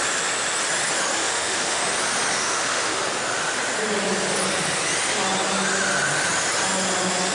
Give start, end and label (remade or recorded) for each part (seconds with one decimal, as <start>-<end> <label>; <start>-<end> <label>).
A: 0.0-1.2 recorded; 1.2-1.8 remade; 1.8-2.4 recorded; 2.4-3.0 remade; 3.0-7.3 recorded